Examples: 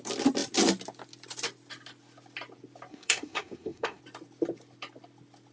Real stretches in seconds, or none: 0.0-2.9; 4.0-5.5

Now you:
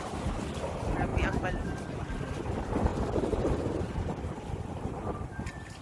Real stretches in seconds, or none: 0.0-2.9; 4.4-5.8

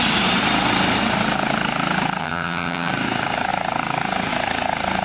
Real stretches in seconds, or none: 0.0-2.2; 2.9-5.0

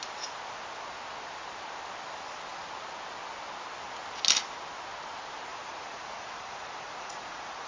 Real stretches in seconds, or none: 0.0-5.5

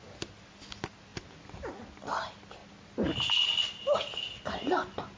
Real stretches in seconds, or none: 0.0-5.2